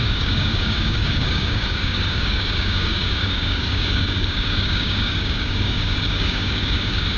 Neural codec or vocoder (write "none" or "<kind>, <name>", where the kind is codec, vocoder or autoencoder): codec, DAC